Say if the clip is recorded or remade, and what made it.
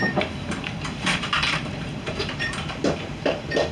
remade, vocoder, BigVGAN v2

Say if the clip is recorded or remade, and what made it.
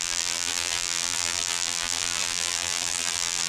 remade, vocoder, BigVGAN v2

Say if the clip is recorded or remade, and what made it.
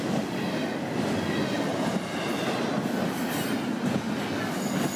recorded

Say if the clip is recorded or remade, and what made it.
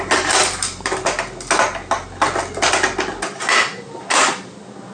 recorded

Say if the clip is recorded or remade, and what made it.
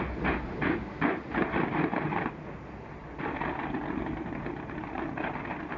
recorded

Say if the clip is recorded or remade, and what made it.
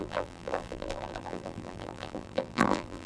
remade, vocoder, BigVGAN v2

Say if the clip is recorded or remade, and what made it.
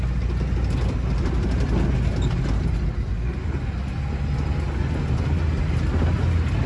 recorded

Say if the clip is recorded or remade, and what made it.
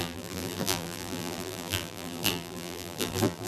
remade, vocoder, BigVGAN v2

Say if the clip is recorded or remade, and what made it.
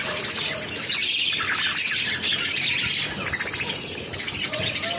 recorded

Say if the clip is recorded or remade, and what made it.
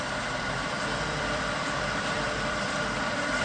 remade, vocoder, BigVGAN v2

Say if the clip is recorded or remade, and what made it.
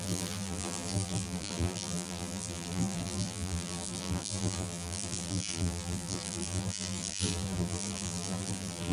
remade, vocoder, BigVGAN v2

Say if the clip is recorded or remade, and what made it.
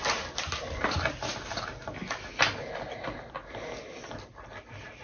recorded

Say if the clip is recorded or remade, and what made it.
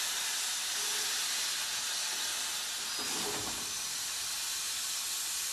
recorded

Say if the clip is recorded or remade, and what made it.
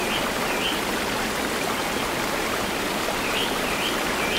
remade, vocoder, BigVGAN v2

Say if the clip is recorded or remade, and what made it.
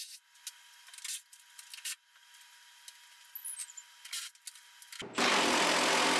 recorded